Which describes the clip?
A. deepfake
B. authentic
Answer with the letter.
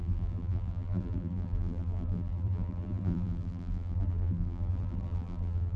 A